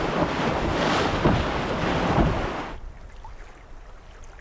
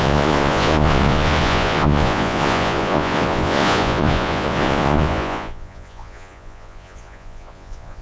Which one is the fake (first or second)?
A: second